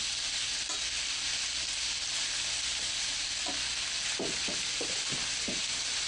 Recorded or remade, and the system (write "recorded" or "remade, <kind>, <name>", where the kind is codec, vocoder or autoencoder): recorded